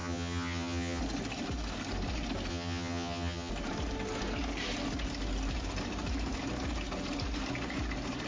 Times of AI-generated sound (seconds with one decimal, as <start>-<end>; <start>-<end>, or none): 0.0-1.0; 2.5-3.5